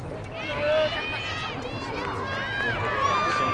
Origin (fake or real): real